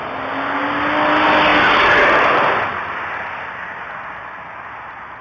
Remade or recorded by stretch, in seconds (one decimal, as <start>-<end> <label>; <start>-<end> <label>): 0.0-5.2 recorded